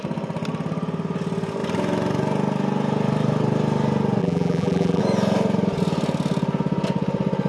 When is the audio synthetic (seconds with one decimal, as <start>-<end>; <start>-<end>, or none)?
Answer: 4.2-5.0